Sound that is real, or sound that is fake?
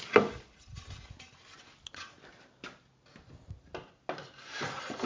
real